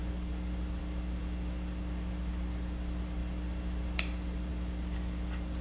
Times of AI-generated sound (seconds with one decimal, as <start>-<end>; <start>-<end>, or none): none